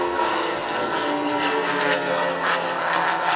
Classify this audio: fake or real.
fake